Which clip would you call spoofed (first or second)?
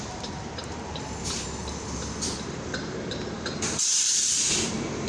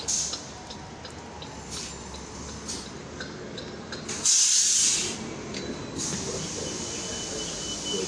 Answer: first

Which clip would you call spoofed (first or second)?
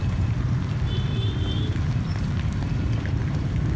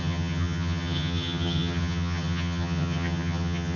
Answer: second